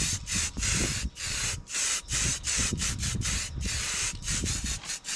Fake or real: real